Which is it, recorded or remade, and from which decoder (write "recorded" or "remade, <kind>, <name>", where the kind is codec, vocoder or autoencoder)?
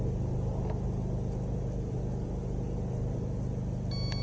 recorded